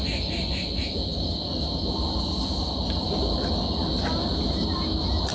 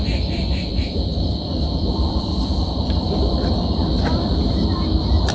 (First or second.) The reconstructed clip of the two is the second